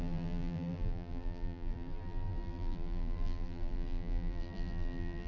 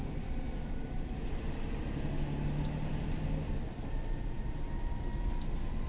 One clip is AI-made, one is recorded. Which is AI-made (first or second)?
first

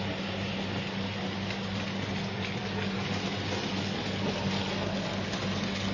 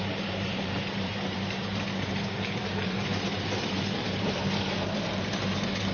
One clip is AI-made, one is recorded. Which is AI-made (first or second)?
second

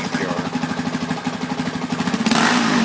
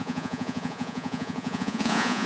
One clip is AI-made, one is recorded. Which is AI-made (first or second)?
second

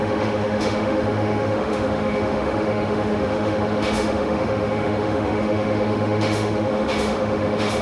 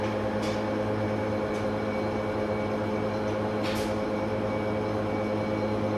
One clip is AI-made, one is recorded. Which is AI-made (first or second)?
first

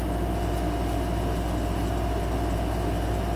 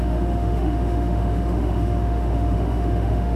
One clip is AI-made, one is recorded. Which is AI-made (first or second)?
second